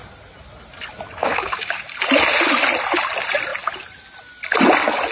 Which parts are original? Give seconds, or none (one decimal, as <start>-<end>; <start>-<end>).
0.0-1.2; 1.9-5.1